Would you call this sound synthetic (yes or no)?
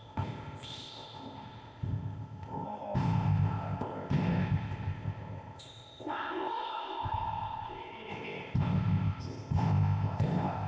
yes